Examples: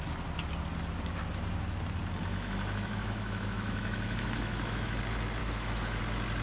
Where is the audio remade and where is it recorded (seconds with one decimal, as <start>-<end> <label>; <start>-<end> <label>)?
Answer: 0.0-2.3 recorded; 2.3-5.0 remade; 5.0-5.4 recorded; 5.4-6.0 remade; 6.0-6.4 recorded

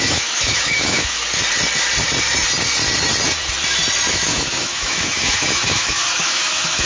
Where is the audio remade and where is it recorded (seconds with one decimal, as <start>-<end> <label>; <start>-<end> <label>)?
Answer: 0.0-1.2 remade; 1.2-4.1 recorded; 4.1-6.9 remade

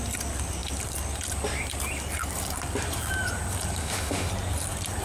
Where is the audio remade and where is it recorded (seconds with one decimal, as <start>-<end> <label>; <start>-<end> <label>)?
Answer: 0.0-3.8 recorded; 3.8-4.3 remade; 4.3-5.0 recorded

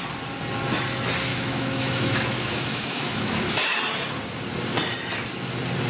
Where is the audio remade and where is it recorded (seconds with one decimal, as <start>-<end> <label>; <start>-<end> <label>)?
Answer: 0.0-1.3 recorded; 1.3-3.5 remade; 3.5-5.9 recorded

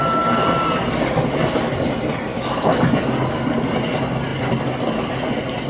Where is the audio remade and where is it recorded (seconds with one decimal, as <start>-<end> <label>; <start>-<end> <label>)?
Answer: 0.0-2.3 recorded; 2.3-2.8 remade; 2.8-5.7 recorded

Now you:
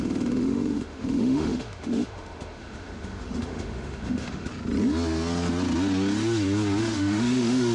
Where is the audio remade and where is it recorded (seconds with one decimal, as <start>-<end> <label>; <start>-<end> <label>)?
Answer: 0.0-4.5 remade; 4.5-6.8 recorded; 6.8-7.7 remade

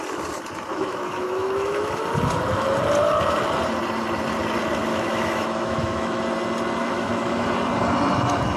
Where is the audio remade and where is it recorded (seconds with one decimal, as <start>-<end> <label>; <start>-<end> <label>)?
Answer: 0.0-0.7 recorded; 0.7-1.9 remade; 1.9-4.9 recorded; 4.9-6.2 remade; 6.2-6.8 recorded; 6.8-7.5 remade; 7.5-8.6 recorded